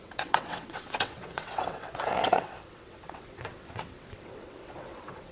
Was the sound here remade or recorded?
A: remade